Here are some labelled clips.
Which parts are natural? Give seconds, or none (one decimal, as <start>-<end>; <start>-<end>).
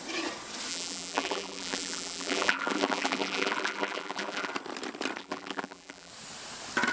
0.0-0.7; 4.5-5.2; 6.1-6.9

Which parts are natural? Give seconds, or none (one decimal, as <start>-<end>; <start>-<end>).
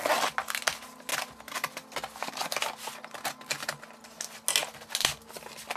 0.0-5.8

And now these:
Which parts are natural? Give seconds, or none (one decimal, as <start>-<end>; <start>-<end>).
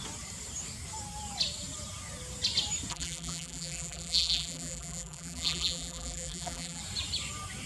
0.0-2.9; 6.8-7.7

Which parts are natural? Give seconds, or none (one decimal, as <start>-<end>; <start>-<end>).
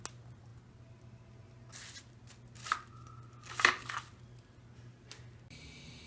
0.0-6.1